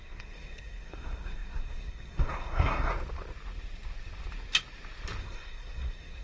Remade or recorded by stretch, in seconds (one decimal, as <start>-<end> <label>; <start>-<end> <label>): 0.0-2.9 remade; 2.9-5.2 recorded; 5.2-6.2 remade